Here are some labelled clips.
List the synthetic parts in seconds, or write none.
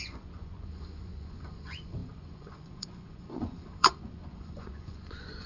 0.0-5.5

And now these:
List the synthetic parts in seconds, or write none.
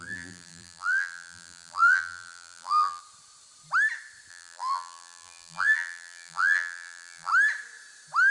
0.0-3.0; 4.3-7.3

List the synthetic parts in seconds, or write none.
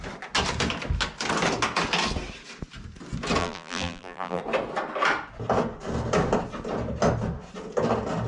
3.4-4.4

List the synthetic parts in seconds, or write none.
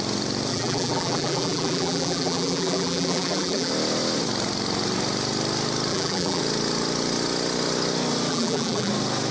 0.5-3.7; 5.9-6.4; 8.3-8.9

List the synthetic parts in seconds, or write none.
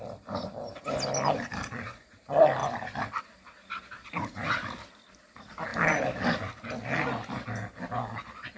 none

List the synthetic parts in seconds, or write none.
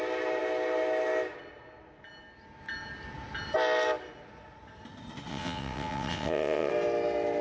5.3-6.7